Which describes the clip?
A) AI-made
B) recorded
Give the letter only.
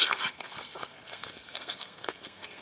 A